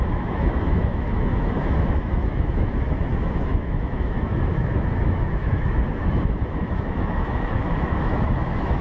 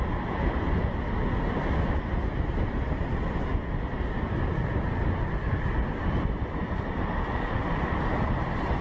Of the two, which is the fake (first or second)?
first